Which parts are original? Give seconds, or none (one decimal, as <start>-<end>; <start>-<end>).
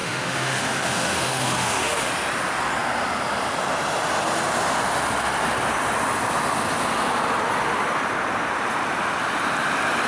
2.1-10.1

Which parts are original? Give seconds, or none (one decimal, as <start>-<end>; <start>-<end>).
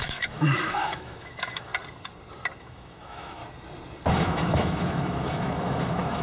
1.7-2.6; 3.4-4.1